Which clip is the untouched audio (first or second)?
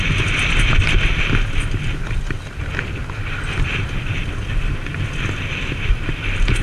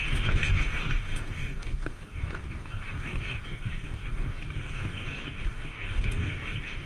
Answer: first